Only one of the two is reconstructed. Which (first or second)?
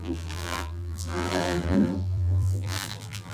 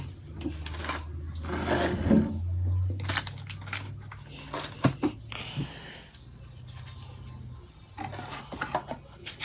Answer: first